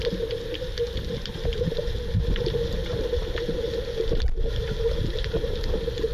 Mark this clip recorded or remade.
recorded